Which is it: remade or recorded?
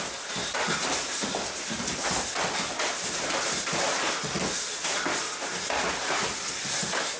recorded